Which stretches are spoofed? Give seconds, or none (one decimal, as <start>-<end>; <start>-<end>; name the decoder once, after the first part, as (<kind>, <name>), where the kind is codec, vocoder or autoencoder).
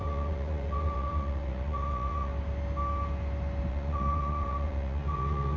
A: 0.0-2.3 (vocoder, Vocos); 3.7-5.6